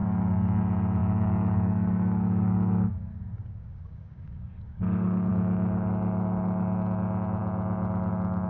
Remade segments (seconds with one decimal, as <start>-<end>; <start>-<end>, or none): 0.0-0.6; 1.0-5.3